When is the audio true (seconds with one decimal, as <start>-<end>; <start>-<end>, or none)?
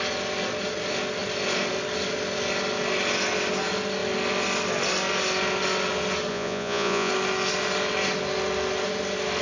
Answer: 0.0-6.3; 7.1-9.4